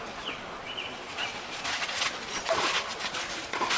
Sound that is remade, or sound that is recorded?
remade